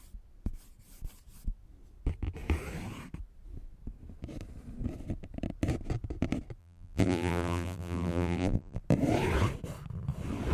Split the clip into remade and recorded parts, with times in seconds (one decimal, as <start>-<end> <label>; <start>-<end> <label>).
0.0-6.6 recorded; 6.6-8.8 remade; 8.8-10.5 recorded